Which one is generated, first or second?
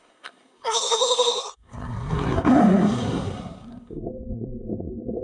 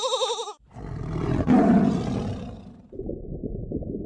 first